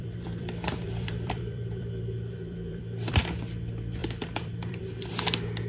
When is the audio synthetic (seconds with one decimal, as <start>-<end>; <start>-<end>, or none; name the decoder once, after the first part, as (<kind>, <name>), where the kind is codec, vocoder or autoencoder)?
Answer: 0.0-3.2 (vocoder, BigVGAN v2); 4.0-4.8